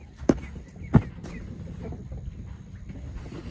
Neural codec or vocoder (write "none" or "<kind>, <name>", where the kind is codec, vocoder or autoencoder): none